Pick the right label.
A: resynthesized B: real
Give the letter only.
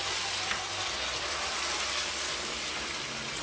B